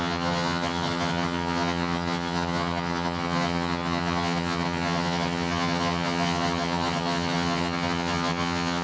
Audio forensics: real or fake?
fake